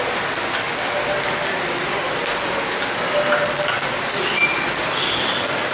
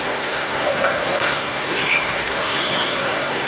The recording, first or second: first